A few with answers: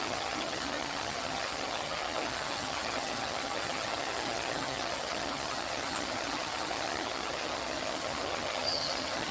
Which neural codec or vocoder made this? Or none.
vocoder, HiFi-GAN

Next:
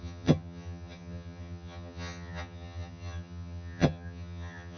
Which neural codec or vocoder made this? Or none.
vocoder, HiFi-GAN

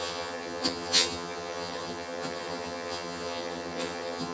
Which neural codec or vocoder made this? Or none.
vocoder, HiFi-GAN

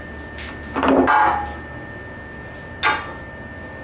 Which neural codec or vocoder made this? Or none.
none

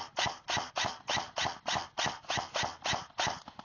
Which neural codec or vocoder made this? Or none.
none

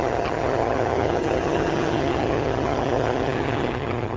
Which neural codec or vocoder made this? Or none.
vocoder, HiFi-GAN